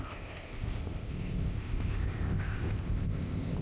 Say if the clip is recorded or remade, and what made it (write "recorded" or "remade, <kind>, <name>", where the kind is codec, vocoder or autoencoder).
remade, codec, ZipCodec